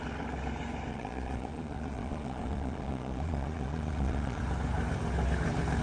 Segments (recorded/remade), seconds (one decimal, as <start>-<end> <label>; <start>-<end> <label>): 0.0-0.9 recorded; 0.9-4.4 remade; 4.4-5.8 recorded